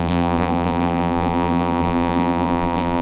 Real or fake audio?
fake